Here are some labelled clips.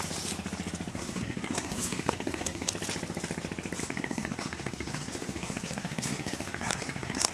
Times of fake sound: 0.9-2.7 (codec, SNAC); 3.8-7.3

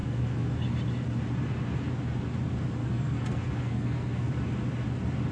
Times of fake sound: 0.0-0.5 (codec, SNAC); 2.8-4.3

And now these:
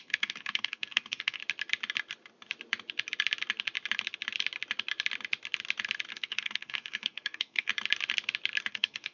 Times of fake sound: 0.0-1.4 (codec, SNAC); 6.1-7.7; 8.7-9.1